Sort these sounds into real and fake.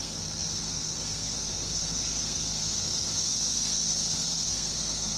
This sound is fake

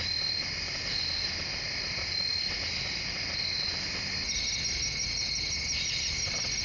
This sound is real